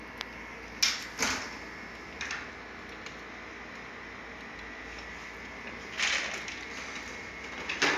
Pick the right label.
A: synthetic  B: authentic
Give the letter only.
B